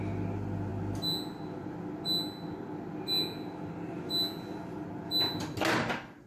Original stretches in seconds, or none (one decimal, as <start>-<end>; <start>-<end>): 0.0-6.3